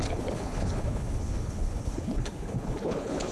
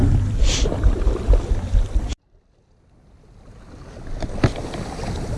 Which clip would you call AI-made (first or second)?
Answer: first